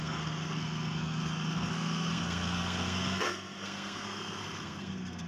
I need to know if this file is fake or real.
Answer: fake